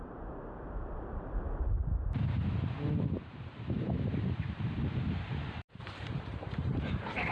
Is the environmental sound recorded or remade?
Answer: remade